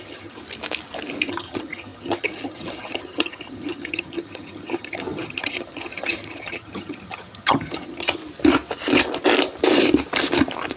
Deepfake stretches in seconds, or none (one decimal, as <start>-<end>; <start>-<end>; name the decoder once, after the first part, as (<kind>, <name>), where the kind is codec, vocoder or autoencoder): 0.0-0.4 (vocoder, HiFi-GAN); 1.3-8.2